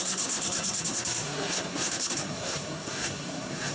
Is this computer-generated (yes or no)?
yes